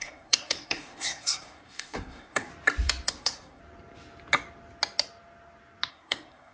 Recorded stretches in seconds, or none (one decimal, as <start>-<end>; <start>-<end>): 2.5-3.1; 3.6-5.9